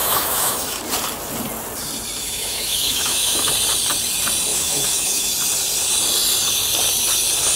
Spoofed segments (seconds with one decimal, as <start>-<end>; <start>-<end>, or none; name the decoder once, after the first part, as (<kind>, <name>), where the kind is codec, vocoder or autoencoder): 0.0-0.8 (autoencoder, DAC-VAE); 2.2-3.5; 4.5-5.3